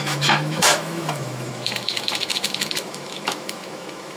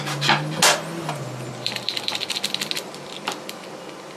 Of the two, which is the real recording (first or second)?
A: second